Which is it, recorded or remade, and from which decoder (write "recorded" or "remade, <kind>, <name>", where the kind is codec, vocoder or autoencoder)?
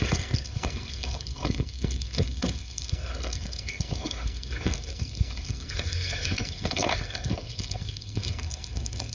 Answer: remade, codec, SNAC